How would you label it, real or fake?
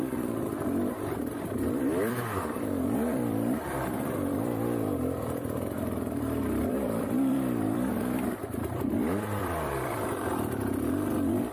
fake